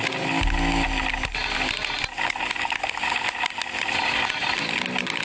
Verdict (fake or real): real